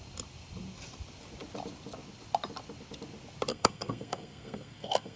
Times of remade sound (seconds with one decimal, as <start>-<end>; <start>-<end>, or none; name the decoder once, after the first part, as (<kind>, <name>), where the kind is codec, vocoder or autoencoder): 3.5-5.2 (codec, SNAC)